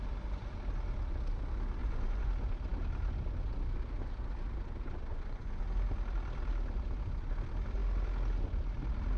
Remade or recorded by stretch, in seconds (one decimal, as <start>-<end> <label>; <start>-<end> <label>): 0.0-1.8 recorded; 1.8-2.3 remade; 2.3-5.1 recorded; 5.1-5.6 remade; 5.6-9.2 recorded